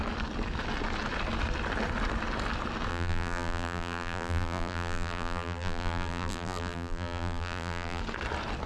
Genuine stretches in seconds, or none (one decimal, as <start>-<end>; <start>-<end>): 0.0-2.9; 8.0-8.7